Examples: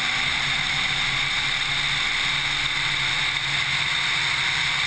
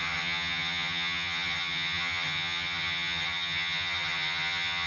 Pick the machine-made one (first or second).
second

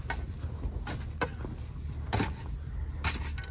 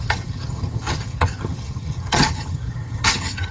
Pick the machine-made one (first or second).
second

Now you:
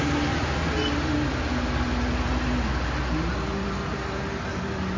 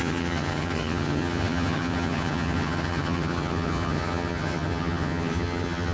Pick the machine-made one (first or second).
second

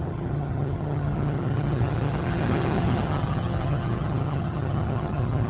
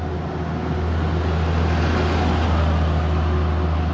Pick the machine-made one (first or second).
first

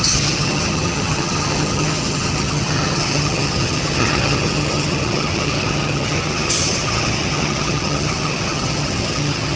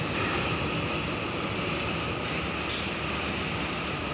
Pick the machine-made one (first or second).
first